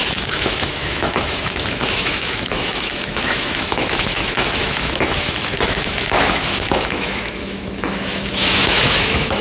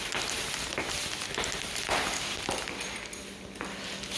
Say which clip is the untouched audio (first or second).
second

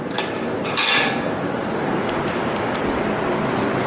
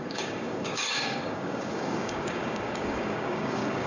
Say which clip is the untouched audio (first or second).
first